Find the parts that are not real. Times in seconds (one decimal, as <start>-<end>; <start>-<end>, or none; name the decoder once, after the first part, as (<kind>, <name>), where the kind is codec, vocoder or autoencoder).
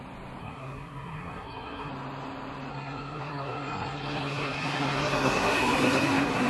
0.4-1.9 (codec, SNAC); 2.7-6.5